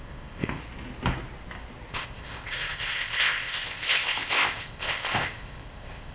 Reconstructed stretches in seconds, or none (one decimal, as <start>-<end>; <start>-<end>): 0.0-0.6; 1.9-6.1